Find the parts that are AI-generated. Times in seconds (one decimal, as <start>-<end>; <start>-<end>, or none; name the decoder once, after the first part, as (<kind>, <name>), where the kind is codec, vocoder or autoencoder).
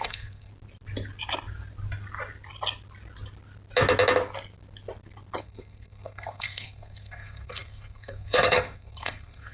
0.0-0.5 (codec, SNAC); 5.4-9.5